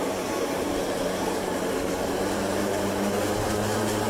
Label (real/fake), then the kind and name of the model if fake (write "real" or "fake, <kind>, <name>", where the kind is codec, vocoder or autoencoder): fake, vocoder, BigVGAN v2